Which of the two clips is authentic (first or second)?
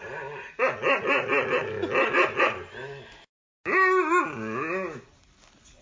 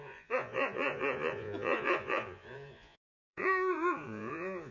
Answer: first